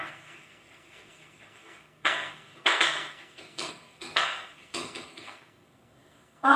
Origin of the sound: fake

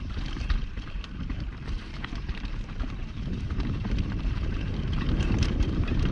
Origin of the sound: fake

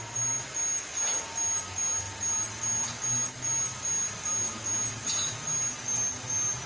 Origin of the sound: real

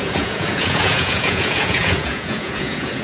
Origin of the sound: fake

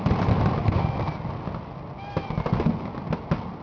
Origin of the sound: real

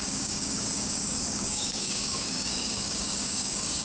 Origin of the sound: fake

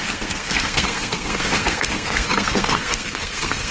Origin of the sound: fake